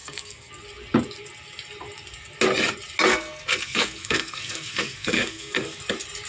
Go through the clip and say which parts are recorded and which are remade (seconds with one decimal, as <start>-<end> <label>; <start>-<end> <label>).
0.0-0.5 remade; 0.5-3.1 recorded; 3.1-5.8 remade; 5.8-6.3 recorded